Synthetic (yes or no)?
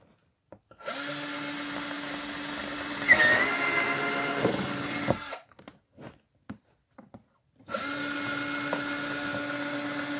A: no